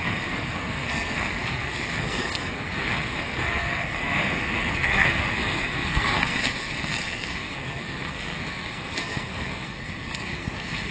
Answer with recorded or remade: remade